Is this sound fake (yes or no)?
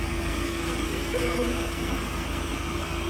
yes